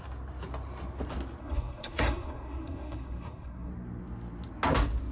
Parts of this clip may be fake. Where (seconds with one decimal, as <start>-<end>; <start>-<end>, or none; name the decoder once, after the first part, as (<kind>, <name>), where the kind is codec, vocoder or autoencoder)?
1.4-3.7 (codec, SNAC)

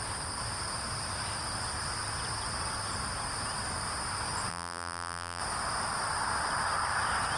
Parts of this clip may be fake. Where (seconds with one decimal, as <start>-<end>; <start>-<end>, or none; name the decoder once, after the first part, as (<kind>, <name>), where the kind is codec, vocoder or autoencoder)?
4.5-5.4 (vocoder, BigVGAN v2)

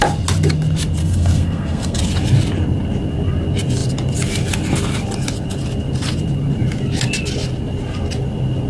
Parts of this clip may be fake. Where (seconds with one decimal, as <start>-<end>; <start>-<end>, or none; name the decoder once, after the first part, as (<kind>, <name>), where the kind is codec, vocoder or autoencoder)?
1.0-2.0 (codec, SNAC)

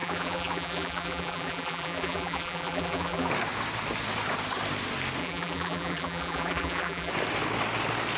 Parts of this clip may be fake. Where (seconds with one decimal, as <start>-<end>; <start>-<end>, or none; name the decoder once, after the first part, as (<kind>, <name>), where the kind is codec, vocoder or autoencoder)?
0.0-3.3 (vocoder, BigVGAN v2); 5.2-7.1

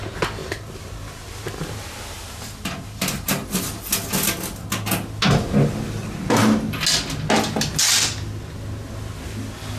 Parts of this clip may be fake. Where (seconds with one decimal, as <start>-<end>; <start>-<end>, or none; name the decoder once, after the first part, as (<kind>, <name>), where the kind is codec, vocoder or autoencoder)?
0.4-1.7 (vocoder, BigVGAN v2)